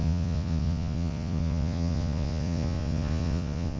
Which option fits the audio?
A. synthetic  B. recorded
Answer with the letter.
A